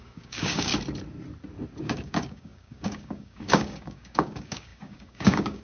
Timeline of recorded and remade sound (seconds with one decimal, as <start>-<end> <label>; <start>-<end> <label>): 0.0-0.7 remade; 0.7-1.8 recorded; 1.8-5.6 remade